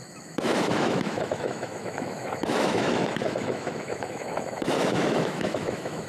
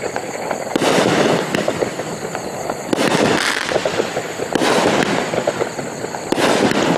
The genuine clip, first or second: second